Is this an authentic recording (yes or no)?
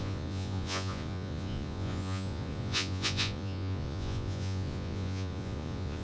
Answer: no